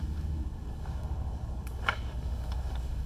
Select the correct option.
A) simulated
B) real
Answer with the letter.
A